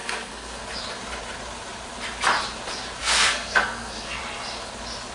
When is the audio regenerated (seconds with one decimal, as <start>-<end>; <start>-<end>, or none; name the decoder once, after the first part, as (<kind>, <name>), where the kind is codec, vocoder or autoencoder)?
0.0-0.6 (codec, SNAC); 3.0-4.2